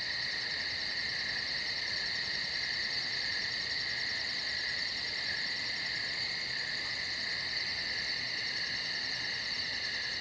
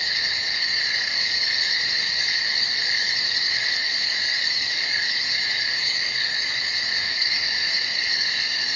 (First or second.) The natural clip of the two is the first